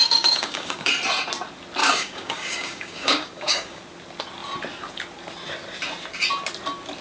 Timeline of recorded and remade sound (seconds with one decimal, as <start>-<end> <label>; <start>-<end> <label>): 0.0-0.9 remade; 0.9-1.8 recorded; 1.8-3.8 remade; 3.8-7.0 recorded